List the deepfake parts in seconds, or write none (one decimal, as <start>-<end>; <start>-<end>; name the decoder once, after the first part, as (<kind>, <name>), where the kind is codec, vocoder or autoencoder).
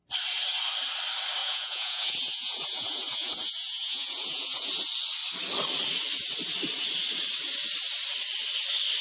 1.4-4.8 (vocoder, Vocos)